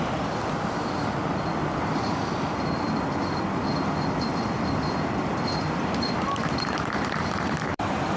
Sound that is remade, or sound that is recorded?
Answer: remade